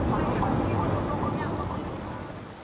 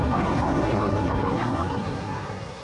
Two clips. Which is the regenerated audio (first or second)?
second